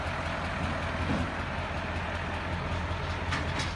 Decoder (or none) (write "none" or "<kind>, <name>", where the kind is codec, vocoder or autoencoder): none